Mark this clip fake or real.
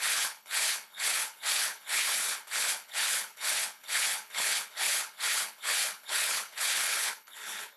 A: fake